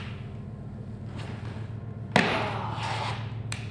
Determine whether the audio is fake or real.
real